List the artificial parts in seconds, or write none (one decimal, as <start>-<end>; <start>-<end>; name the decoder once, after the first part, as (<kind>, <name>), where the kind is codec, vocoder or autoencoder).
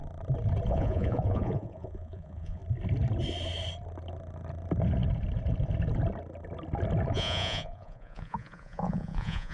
0.7-2.6 (vocoder, Vocos); 7.1-9.5